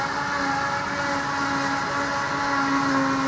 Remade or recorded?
recorded